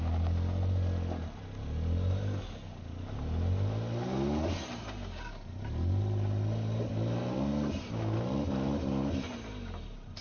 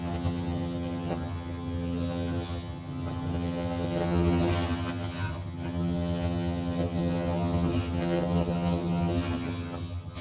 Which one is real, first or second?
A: first